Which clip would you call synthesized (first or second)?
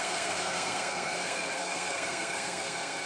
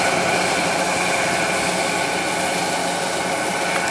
first